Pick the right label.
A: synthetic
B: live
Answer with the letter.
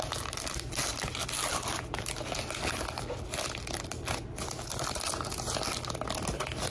B